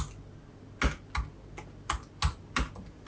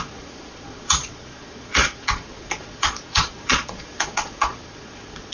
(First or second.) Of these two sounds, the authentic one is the first